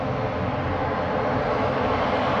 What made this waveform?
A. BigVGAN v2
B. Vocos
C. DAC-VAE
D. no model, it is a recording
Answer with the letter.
D